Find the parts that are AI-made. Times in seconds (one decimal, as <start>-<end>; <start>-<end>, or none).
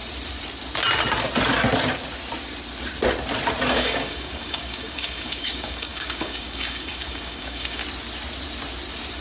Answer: 3.7-7.8